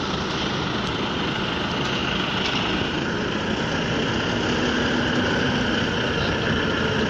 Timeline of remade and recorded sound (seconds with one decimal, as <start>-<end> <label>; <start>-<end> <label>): 0.0-7.1 recorded